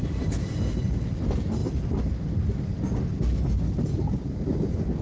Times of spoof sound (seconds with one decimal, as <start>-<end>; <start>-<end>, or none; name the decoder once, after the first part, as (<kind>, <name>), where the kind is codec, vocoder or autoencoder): none